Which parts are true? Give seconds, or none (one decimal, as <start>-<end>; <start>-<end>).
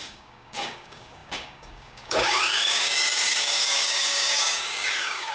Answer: none